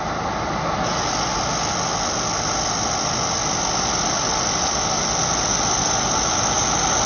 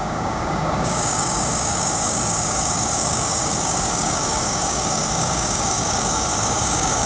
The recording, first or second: first